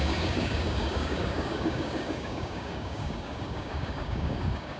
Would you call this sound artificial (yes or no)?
yes